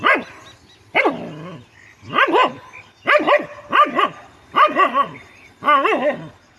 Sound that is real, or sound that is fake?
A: real